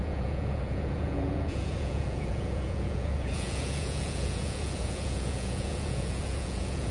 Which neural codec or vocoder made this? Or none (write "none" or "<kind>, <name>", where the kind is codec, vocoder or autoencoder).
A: vocoder, Vocos